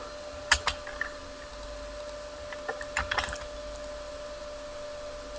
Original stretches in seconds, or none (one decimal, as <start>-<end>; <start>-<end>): 0.0-5.4